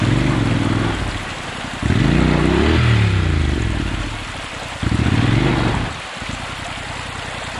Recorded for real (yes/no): yes